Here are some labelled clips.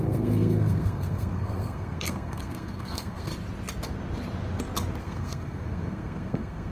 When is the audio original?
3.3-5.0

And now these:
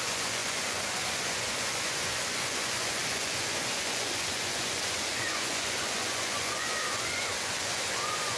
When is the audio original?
none